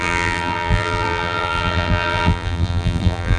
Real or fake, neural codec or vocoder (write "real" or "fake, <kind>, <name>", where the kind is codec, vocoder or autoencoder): fake, vocoder, BigVGAN v2